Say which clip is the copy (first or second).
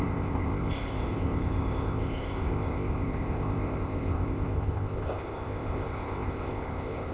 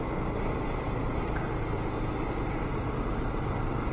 first